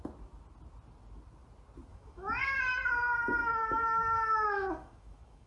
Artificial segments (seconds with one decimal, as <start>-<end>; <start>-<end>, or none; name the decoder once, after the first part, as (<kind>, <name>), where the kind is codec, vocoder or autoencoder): 1.9-2.4 (autoencoder, DAC-VAE); 3.4-5.5